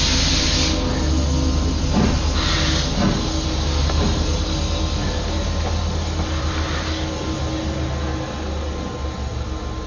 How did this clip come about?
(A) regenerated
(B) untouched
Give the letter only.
B